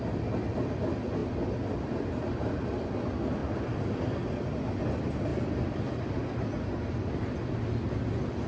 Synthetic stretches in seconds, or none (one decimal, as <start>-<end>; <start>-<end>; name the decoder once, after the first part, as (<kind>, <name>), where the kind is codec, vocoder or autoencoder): none